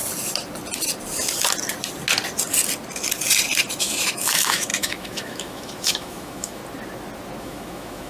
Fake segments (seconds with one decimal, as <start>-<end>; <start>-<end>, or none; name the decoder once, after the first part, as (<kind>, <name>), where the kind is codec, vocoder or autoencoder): 3.8-6.6 (autoencoder, DAC-VAE); 7.4-8.1